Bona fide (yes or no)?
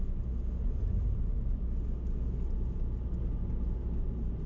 yes